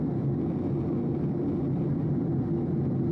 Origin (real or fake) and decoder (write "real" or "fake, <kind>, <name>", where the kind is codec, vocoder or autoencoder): real